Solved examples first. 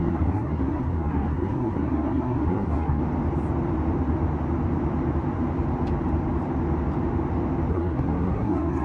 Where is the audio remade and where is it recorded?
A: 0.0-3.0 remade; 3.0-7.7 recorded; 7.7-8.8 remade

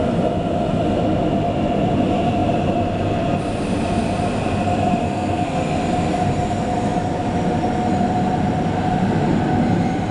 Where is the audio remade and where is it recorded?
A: 0.0-5.0 recorded; 5.0-5.6 remade; 5.6-10.1 recorded